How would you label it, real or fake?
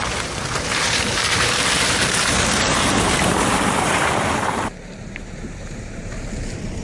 fake